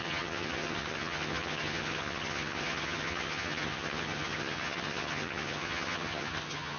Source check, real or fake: fake